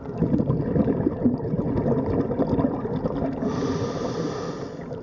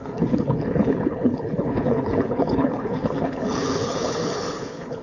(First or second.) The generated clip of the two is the second